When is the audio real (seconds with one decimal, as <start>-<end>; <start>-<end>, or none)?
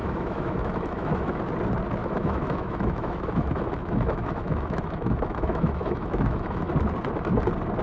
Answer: 1.4-2.0; 6.7-7.8